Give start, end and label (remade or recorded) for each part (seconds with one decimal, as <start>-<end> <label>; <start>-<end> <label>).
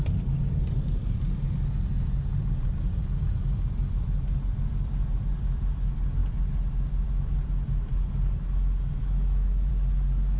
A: 0.0-9.0 recorded; 9.0-9.7 remade; 9.7-10.4 recorded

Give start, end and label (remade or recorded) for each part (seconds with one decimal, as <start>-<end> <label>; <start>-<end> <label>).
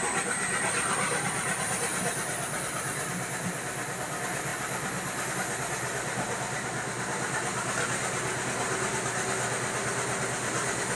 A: 0.0-10.9 recorded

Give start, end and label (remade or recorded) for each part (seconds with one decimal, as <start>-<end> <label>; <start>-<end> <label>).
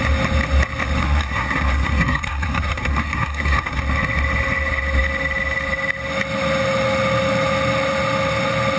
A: 0.0-1.0 recorded; 1.0-3.8 remade; 3.8-8.8 recorded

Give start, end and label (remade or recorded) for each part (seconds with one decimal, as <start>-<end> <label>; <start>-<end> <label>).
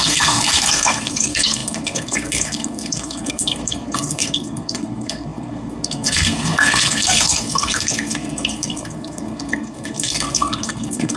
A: 0.0-11.2 remade